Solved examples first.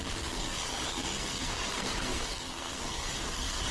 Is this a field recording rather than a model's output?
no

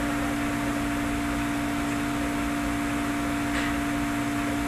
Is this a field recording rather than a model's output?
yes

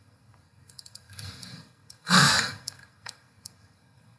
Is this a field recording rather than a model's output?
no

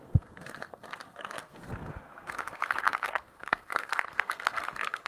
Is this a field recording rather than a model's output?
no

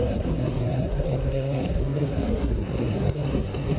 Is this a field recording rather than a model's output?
no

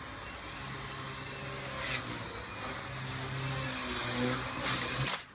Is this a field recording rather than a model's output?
yes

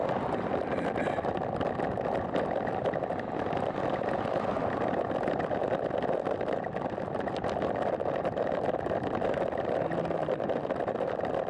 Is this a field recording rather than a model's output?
yes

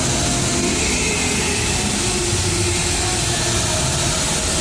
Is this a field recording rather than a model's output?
yes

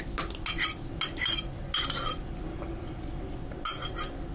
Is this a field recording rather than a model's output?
yes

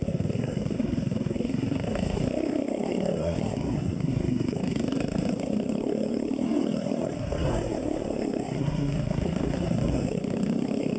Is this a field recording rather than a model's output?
no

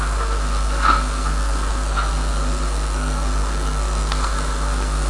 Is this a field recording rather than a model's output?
no